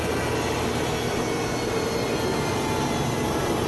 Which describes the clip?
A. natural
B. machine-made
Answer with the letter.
A